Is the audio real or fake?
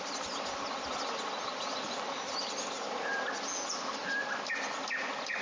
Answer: real